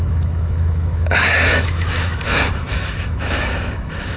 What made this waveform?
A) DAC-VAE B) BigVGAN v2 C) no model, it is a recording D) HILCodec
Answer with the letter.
A